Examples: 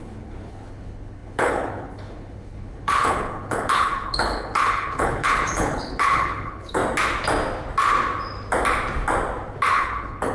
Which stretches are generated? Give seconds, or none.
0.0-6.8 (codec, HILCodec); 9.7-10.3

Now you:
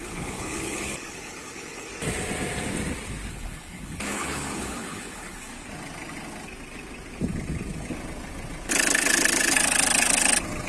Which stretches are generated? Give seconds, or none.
0.0-1.9 (codec, HILCodec); 3.3-5.5

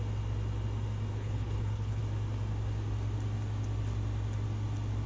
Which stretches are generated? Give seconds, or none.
1.1-2.0 (codec, HILCodec)

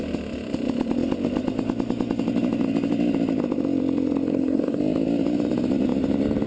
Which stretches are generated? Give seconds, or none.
4.3-4.8 (codec, HILCodec)

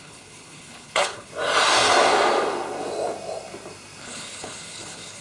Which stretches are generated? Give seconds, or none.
0.0-1.3 (codec, HILCodec); 4.0-5.2

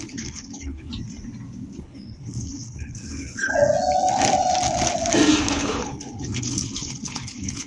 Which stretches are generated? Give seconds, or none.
0.0-0.9 (codec, HILCodec); 1.8-3.5; 5.4-7.7